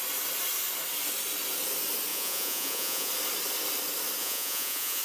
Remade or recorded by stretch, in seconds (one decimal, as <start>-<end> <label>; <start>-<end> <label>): 0.0-2.1 recorded; 2.1-3.1 remade; 3.1-4.2 recorded; 4.2-5.0 remade